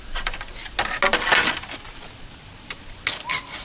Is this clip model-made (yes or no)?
no